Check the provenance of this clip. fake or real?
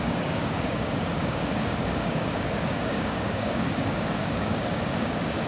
fake